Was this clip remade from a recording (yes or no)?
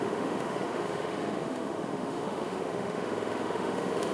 yes